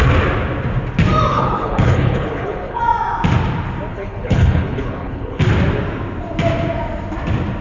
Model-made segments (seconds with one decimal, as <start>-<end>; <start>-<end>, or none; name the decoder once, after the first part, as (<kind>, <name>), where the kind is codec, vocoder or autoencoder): 1.3-2.8 (codec, HILCodec); 3.9-5.4